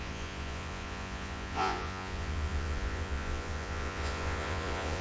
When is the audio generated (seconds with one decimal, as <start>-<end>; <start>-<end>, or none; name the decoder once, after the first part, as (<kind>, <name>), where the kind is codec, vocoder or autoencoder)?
0.0-5.0 (vocoder, Vocos)